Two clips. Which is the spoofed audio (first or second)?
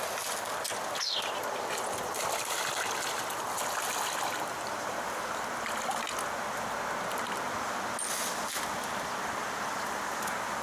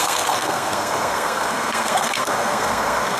second